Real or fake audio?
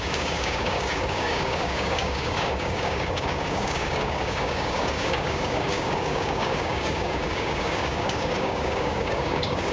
fake